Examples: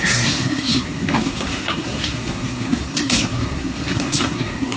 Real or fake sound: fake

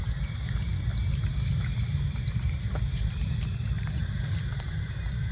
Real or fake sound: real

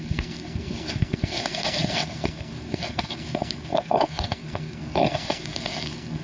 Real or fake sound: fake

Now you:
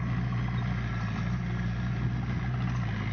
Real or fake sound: real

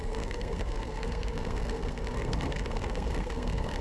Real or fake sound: fake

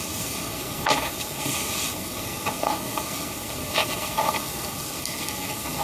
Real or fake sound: fake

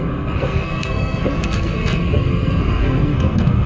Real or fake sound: fake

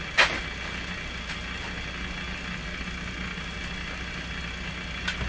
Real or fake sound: real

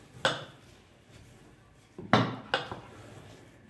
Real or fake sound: real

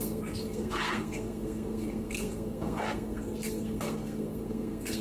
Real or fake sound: fake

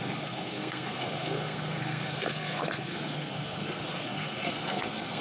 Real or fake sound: fake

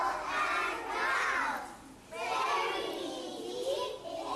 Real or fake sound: real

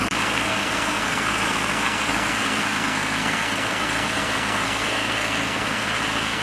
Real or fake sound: fake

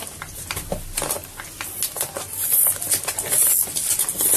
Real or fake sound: real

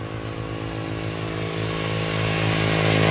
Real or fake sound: real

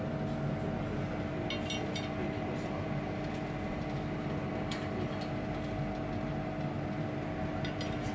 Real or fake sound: real